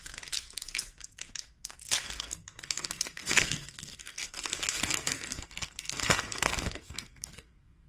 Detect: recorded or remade remade